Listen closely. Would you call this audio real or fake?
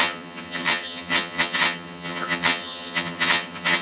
fake